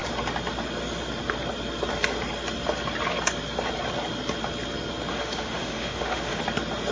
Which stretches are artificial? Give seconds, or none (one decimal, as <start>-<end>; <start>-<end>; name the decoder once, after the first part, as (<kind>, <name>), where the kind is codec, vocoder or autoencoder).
5.1-6.4 (autoencoder, DAC-VAE)